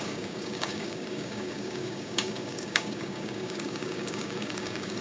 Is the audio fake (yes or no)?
yes